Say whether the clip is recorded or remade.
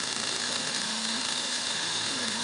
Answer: remade